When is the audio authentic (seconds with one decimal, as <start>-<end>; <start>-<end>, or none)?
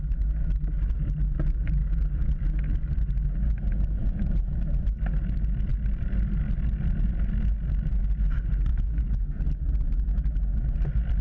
0.0-1.8; 2.4-4.0; 4.5-8.7; 9.4-11.2